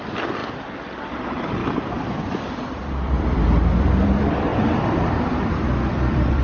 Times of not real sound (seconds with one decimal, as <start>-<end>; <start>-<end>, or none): 0.0-0.4; 1.1-1.6; 2.7-6.4